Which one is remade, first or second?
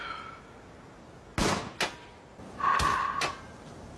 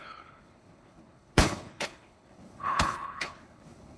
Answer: second